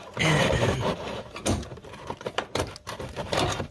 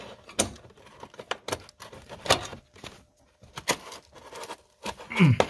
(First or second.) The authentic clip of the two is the second